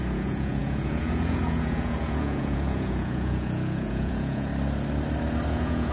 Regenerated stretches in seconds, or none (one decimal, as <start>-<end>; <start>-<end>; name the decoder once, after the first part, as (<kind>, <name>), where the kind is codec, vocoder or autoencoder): 0.0-4.5 (vocoder, Vocos); 5.5-5.9